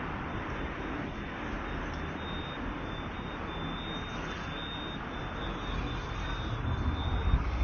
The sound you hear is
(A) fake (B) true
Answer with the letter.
B